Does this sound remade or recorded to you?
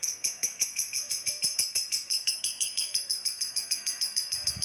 remade